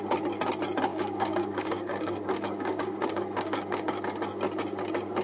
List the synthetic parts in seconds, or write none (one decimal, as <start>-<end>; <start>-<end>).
0.9-4.0